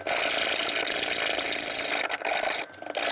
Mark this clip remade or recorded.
recorded